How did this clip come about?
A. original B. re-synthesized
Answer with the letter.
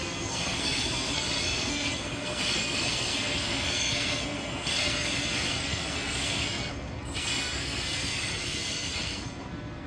B